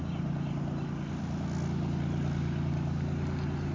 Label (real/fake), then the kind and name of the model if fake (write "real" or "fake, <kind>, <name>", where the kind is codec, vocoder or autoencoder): real